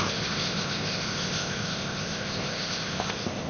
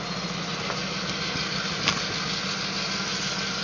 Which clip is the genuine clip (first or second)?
second